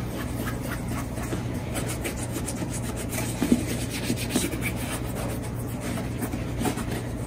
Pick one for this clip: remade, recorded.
recorded